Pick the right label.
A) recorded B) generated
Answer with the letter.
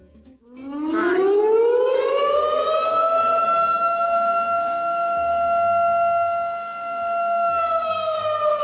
B